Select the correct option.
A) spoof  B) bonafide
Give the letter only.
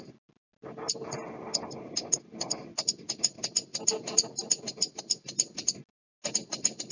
B